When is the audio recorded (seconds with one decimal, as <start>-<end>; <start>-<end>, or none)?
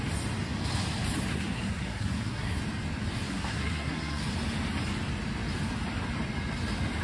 0.0-1.3; 2.6-3.3; 4.2-7.0